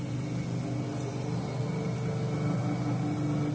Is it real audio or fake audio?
real